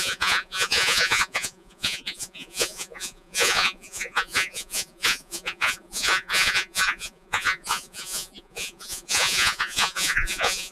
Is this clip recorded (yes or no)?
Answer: no